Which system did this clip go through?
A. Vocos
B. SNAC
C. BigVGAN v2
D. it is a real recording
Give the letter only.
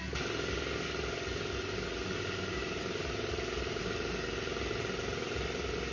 D